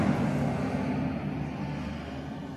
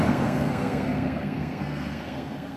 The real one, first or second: first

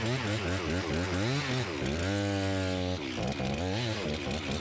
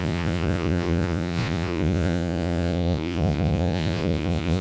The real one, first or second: first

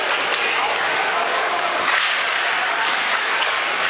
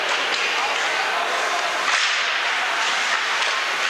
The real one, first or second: second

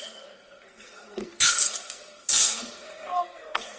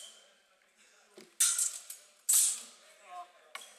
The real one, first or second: second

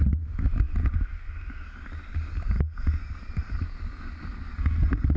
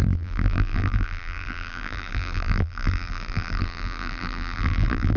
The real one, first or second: first